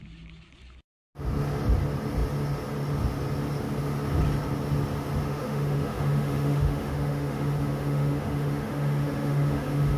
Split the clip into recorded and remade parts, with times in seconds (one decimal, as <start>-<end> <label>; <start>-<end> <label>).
0.0-5.2 recorded; 5.2-10.0 remade